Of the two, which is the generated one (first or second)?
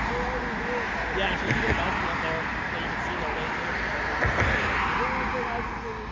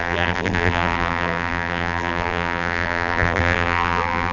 second